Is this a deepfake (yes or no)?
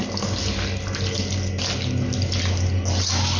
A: no